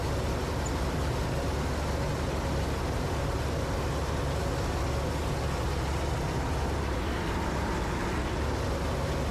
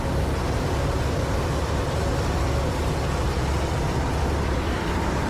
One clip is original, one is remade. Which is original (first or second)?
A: first